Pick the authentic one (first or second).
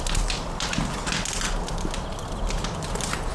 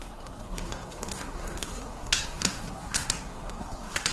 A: first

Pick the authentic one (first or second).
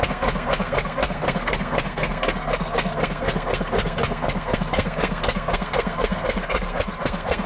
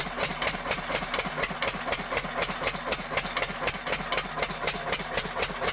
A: second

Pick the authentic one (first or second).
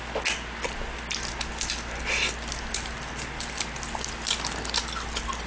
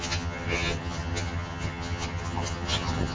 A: first